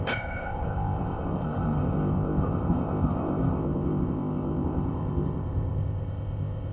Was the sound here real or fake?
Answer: fake